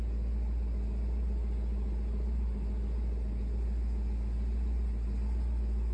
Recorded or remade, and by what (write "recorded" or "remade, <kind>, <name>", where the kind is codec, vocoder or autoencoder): recorded